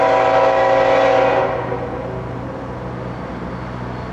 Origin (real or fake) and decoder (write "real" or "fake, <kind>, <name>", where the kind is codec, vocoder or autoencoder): real